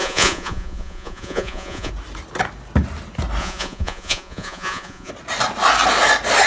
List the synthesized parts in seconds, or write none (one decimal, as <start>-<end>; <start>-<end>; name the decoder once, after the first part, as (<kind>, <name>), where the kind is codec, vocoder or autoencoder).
0.0-1.9 (vocoder, Vocos); 3.4-5.1